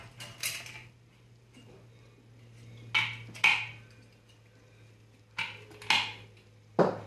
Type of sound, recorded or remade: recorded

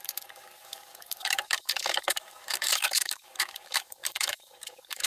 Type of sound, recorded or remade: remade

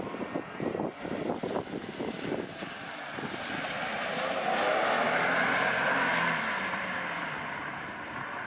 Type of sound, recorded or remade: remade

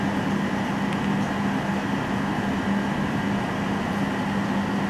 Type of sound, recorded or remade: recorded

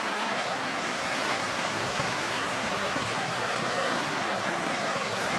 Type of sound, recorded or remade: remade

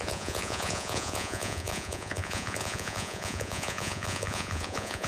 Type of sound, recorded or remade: remade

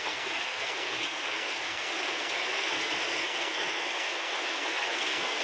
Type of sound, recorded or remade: remade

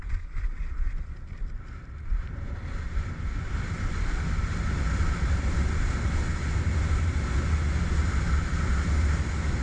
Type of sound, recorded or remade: recorded